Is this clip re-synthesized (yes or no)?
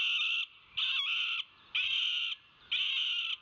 no